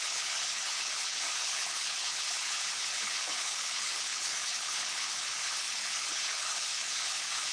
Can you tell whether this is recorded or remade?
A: remade